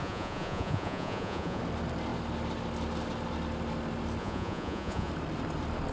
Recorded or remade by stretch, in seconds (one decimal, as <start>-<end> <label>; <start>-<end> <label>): 0.0-1.6 remade; 1.6-4.2 recorded; 4.2-5.1 remade; 5.1-5.9 recorded